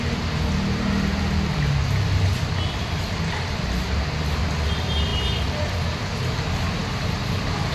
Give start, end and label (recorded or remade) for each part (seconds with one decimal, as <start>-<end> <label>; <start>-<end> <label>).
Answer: 0.0-7.7 recorded